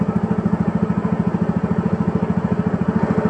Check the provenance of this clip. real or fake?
real